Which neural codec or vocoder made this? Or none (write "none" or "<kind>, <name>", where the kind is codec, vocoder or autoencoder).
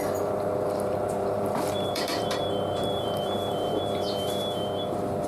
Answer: vocoder, BigVGAN v2